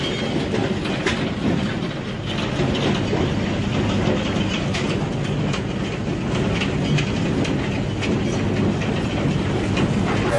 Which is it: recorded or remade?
recorded